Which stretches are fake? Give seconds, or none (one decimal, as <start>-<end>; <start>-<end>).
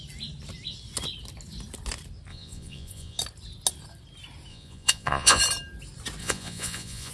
2.3-3.2; 4.5-5.4; 6.2-7.1